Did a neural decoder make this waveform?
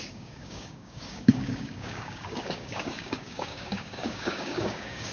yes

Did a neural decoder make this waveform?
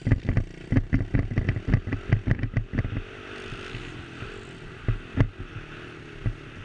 no